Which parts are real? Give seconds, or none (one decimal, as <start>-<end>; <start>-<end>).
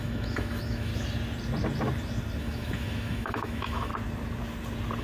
0.9-2.4; 3.9-5.0